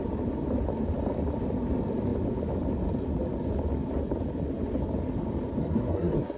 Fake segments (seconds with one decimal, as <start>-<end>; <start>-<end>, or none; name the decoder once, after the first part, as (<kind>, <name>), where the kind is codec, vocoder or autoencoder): 5.6-6.4 (codec, SNAC)